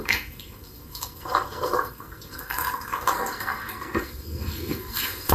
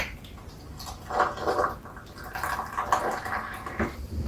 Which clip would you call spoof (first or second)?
first